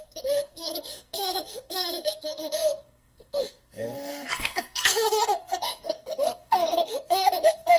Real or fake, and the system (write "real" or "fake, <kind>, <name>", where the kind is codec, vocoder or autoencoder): fake, codec, SNAC